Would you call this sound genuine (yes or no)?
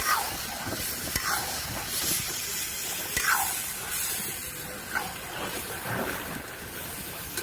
yes